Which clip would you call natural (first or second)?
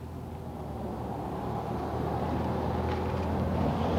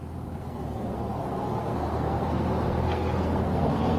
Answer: first